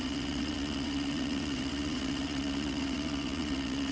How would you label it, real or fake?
fake